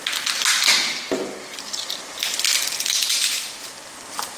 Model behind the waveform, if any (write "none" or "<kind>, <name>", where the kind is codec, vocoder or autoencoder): none